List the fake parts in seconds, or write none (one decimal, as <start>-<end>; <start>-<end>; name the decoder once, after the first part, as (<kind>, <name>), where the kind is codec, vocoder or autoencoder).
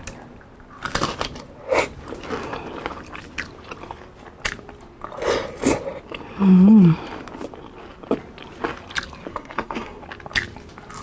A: 9.3-10.0 (codec, SNAC)